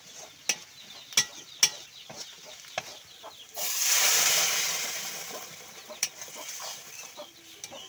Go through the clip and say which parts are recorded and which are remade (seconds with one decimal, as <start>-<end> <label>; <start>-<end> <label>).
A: 0.0-1.7 recorded; 1.7-2.7 remade; 2.7-3.8 recorded; 3.8-7.3 remade; 7.3-7.9 recorded